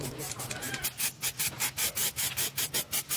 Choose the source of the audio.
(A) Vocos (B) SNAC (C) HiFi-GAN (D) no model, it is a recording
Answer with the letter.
D